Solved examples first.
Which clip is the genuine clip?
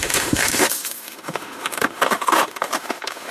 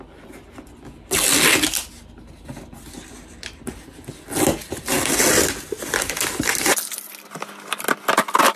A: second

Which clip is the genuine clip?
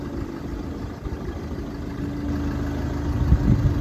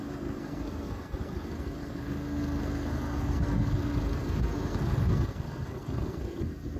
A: first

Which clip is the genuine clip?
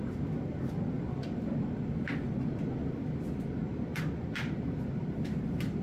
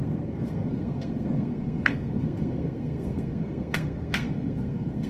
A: first